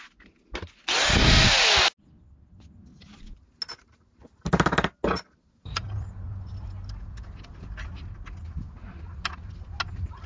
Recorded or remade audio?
recorded